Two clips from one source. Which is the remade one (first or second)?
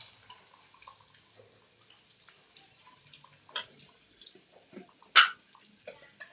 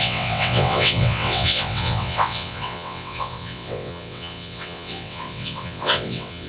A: second